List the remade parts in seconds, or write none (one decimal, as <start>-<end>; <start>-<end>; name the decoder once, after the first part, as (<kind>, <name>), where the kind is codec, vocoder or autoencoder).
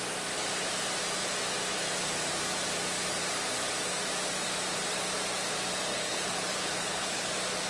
5.9-7.3 (codec, HILCodec)